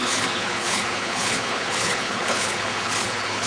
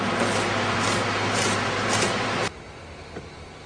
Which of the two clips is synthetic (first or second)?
first